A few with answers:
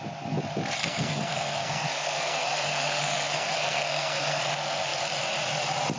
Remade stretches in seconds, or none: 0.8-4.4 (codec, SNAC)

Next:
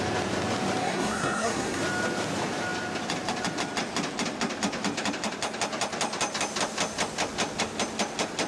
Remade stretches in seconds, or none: 0.8-1.8 (codec, SNAC)

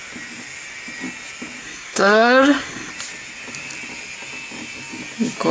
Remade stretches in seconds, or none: 1.6-2.9 (codec, SNAC)